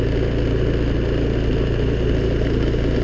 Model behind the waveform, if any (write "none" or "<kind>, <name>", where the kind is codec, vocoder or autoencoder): none